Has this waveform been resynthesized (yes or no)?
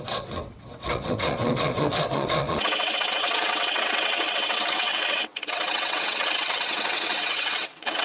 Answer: yes